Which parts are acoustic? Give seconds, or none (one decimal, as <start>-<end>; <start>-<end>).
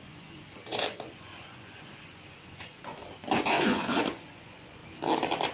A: 4.8-5.5